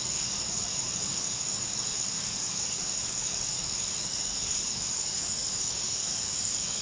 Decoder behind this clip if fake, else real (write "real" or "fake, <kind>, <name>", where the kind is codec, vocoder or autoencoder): fake, codec, DAC